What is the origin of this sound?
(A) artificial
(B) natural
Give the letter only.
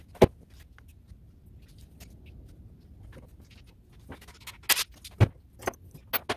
B